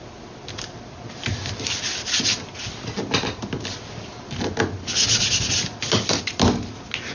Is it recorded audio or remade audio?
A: recorded